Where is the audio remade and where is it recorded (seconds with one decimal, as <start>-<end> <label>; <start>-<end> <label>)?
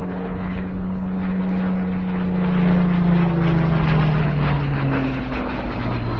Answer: 0.0-1.4 remade; 1.4-4.2 recorded; 4.2-5.5 remade; 5.5-6.2 recorded